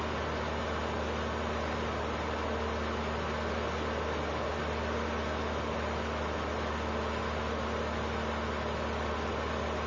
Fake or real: real